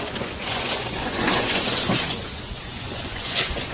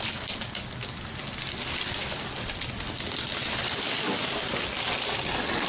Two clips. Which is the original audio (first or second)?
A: second